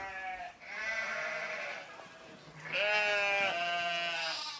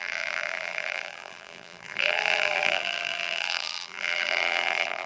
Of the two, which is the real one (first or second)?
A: first